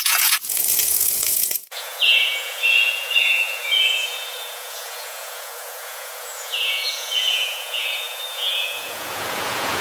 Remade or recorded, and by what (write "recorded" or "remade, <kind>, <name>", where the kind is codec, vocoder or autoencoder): remade, vocoder, Vocos